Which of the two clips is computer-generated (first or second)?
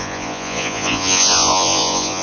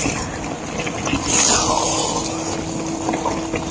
first